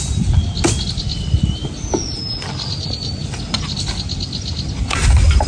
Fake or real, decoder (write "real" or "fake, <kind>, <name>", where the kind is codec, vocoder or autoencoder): real